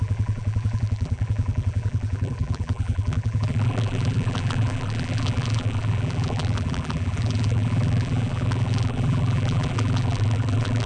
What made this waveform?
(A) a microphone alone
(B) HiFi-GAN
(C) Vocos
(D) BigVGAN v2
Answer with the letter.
D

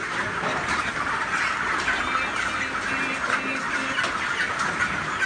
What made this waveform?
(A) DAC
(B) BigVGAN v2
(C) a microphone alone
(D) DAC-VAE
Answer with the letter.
C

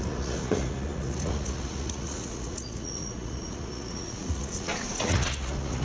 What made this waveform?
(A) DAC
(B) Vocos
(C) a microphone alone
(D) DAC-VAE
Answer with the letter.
B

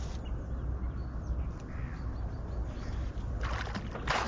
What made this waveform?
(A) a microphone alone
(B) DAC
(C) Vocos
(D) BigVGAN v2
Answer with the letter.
A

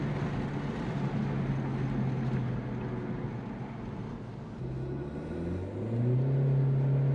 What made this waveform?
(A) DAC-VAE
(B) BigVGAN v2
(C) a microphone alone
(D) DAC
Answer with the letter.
C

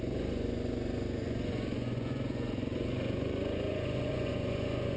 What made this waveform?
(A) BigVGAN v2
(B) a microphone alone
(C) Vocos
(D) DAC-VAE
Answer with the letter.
C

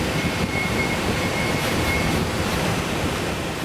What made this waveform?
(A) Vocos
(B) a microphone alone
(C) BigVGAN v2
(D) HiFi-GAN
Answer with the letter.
C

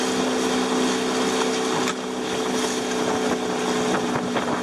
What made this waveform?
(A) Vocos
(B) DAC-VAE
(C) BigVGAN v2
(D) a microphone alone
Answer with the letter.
D